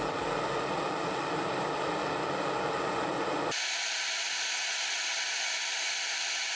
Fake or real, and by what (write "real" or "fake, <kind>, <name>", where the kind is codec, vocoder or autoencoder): real